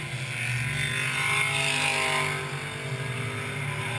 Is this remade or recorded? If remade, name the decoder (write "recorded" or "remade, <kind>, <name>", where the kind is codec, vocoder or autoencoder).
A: recorded